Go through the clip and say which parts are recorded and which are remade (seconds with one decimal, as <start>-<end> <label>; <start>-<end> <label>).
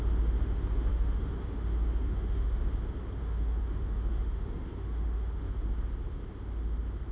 0.0-0.9 recorded; 0.9-2.6 remade; 2.6-3.2 recorded; 3.2-5.7 remade; 5.7-7.1 recorded